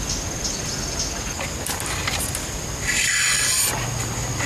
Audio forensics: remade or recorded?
recorded